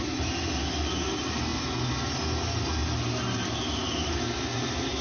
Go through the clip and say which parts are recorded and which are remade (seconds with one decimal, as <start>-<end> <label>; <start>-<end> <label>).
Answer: 0.0-5.0 recorded